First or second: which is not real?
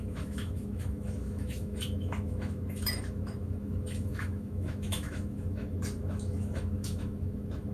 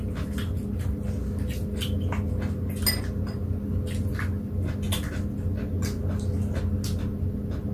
first